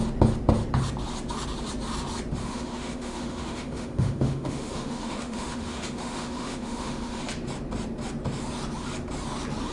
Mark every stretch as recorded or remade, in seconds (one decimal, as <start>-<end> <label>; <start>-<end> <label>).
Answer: 0.0-2.4 recorded; 2.4-7.2 remade; 7.2-9.7 recorded